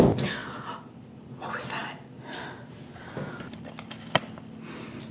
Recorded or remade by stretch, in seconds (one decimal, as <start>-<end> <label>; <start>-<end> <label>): 0.0-5.1 recorded